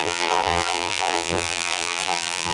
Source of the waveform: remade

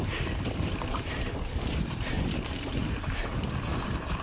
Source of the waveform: remade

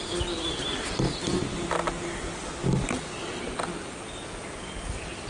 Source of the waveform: recorded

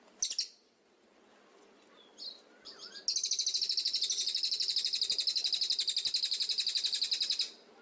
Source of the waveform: recorded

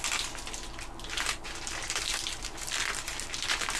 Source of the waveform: recorded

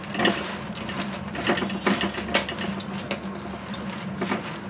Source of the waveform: recorded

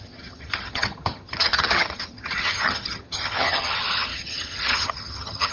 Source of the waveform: remade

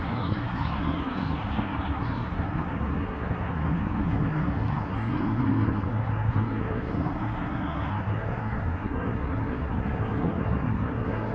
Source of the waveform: remade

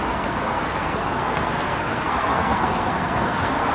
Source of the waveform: remade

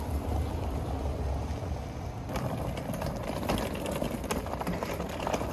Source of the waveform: recorded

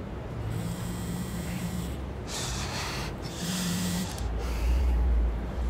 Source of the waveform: remade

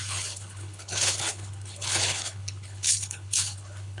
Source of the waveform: remade